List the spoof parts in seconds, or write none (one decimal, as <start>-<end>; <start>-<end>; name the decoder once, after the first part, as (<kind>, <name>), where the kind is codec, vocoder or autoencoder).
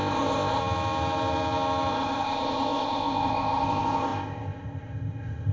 0.0-0.6 (codec, ZipCodec); 1.9-5.5